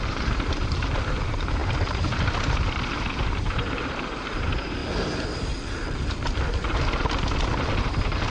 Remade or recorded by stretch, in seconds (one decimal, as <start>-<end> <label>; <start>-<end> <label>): 0.0-4.8 remade; 4.8-7.8 recorded; 7.8-8.3 remade